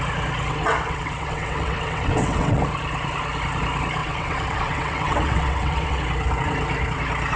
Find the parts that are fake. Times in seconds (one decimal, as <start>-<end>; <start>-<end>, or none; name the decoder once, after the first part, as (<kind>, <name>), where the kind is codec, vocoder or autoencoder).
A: 0.5-2.6 (vocoder, WaveNeXt); 4.0-6.0